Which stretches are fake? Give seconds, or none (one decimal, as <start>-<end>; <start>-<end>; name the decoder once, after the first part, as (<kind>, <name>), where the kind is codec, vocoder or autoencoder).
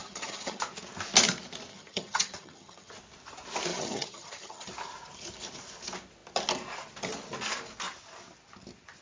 0.0-0.6 (vocoder, HiFi-GAN); 1.7-2.9; 3.7-4.7